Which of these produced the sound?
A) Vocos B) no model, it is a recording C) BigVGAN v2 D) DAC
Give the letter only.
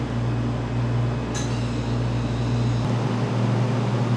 B